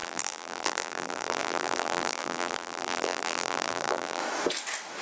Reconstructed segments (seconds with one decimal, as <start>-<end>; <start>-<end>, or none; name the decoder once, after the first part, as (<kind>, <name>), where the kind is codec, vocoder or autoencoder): 0.0-4.2 (vocoder, BigVGAN v2)